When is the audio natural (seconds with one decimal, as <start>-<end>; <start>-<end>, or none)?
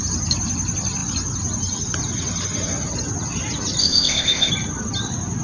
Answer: 0.0-3.8; 4.5-5.4